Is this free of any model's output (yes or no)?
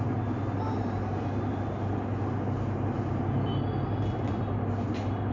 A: yes